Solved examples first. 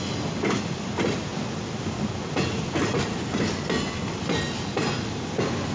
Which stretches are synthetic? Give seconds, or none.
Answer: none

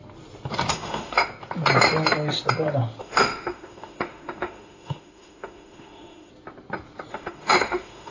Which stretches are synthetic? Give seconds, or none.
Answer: 0.7-1.3 (autoencoder, DAC-VAE); 3.0-6.3; 7.1-8.1

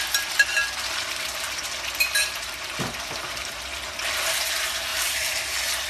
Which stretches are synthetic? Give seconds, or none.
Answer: 2.2-2.7 (vocoder, BigVGAN v2); 4.9-5.5

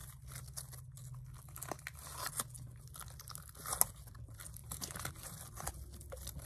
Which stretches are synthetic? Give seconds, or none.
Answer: 4.6-5.1 (vocoder, BigVGAN v2)

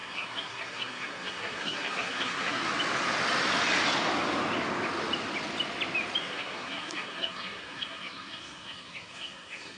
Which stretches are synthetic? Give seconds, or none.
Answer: 0.0-2.7 (codec, SNAC); 6.2-9.8

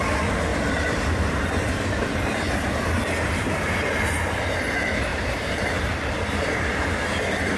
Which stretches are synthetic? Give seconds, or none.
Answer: 0.5-2.0 (vocoder, BigVGAN v2); 5.1-6.6